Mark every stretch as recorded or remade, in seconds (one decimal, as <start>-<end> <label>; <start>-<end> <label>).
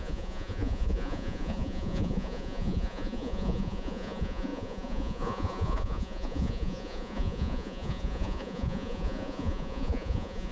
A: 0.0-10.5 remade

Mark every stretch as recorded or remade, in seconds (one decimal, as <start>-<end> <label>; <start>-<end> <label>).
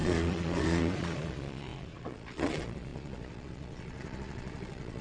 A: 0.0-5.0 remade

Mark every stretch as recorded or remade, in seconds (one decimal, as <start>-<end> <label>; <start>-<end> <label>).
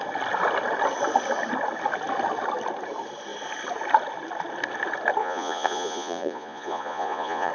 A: 0.0-5.2 recorded; 5.2-7.5 remade